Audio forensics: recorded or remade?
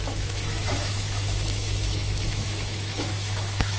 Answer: remade